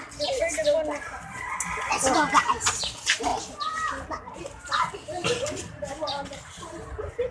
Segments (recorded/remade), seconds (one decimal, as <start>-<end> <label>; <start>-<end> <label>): 0.0-7.3 recorded